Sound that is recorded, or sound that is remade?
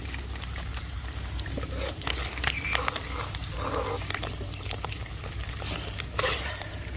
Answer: recorded